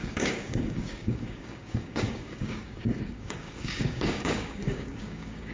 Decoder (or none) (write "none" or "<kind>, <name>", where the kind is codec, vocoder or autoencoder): codec, DAC